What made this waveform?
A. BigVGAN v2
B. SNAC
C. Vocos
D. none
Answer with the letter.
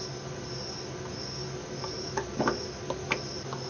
D